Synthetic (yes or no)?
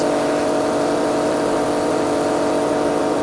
no